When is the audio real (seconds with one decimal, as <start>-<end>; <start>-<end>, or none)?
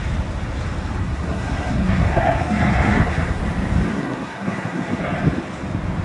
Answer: 0.0-1.0; 3.4-3.9; 5.0-6.0